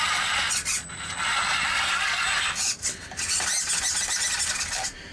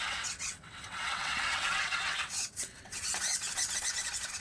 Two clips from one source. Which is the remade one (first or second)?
second